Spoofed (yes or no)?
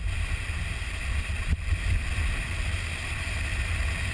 no